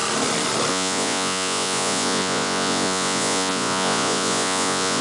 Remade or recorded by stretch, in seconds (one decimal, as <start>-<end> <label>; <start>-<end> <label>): 0.0-0.7 recorded; 0.7-5.0 remade